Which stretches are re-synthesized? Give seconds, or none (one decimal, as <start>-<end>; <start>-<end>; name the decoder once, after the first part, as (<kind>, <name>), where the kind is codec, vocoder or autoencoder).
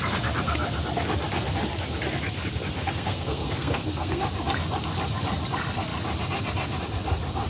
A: 2.8-4.2 (codec, SNAC)